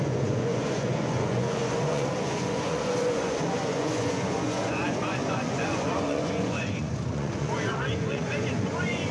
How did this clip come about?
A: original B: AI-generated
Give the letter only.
B